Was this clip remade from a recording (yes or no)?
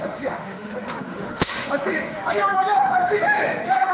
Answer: yes